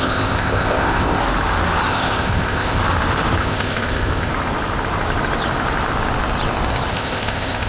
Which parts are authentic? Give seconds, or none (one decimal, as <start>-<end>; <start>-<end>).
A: 1.2-1.9; 2.8-3.4; 4.3-6.9